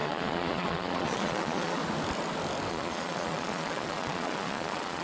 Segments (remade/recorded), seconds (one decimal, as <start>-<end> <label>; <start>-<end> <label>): 0.0-1.8 remade; 1.8-2.7 recorded; 2.7-5.0 remade

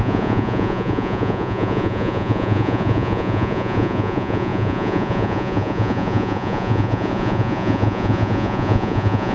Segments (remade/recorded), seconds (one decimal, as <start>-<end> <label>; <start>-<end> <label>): 0.0-9.3 remade